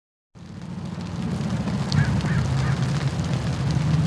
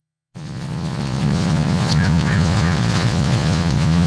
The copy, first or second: second